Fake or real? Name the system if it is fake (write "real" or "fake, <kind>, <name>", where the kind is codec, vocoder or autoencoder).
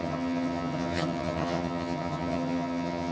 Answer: fake, vocoder, HiFi-GAN